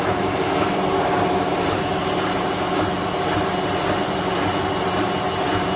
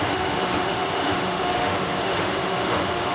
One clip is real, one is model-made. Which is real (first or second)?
first